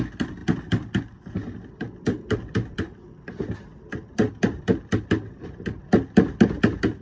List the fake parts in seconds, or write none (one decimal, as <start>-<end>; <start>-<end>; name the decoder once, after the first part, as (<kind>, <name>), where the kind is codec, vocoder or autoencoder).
none